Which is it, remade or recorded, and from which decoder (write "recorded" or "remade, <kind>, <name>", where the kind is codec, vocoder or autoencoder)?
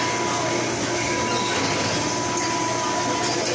recorded